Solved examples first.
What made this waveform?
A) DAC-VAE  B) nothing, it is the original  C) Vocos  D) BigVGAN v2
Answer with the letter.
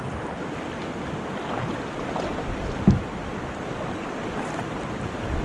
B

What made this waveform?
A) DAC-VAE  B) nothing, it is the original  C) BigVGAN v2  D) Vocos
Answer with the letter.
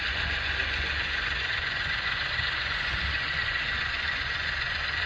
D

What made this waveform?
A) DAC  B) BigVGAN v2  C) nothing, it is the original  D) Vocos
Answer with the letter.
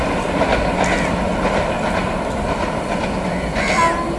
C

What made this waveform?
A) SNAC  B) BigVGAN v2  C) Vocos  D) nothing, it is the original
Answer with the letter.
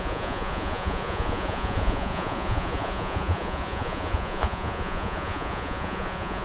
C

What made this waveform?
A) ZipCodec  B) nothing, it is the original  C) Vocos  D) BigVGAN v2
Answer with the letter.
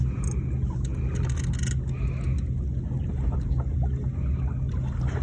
B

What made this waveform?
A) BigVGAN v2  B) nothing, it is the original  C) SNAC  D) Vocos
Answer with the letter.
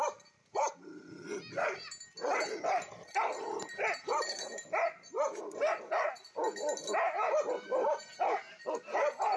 B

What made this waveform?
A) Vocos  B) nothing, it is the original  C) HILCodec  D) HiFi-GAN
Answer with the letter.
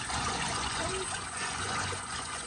A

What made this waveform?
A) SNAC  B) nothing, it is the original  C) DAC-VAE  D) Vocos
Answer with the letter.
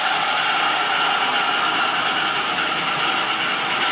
B